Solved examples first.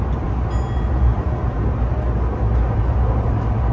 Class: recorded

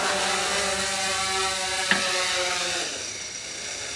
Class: recorded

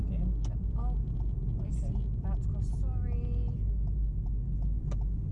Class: recorded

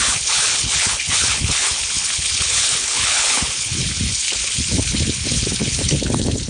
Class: remade